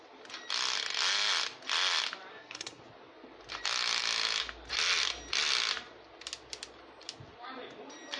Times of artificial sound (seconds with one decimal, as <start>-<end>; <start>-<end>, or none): 2.3-2.8

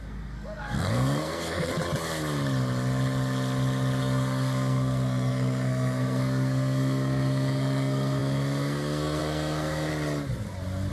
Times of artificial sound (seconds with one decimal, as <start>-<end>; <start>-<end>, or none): 0.0-1.7; 4.0-9.9

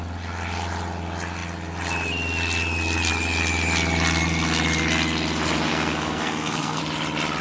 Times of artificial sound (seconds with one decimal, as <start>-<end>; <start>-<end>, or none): 5.7-6.8

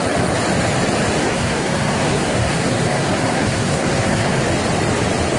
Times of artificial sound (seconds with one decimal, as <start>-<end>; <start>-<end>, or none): 1.2-4.4

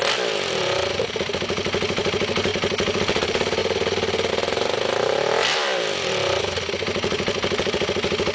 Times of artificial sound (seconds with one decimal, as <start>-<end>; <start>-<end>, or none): none

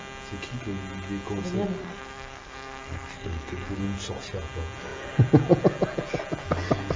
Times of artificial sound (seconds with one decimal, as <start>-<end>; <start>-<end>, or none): 1.8-3.8

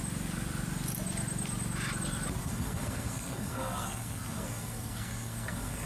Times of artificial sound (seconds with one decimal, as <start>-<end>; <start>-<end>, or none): 2.4-5.9

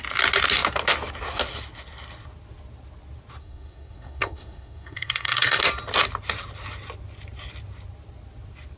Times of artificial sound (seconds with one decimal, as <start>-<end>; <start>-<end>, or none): 3.4-5.6